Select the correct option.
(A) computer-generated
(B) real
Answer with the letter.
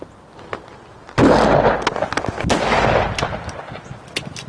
B